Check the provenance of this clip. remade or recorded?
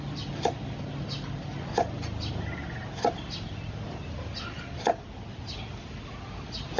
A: recorded